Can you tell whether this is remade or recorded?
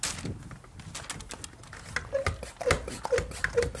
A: recorded